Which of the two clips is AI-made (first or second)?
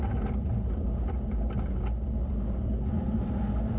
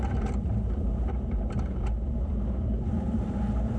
second